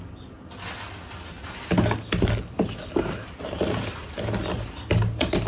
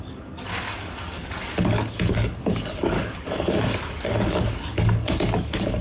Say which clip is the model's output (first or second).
second